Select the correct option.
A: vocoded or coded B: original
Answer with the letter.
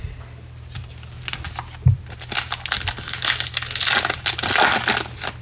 B